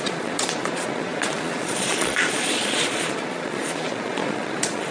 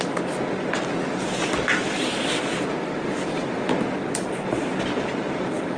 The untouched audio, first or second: second